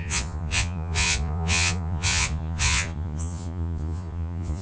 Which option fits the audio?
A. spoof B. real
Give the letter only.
A